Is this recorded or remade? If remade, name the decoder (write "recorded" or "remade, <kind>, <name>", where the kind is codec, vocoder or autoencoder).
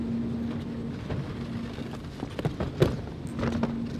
recorded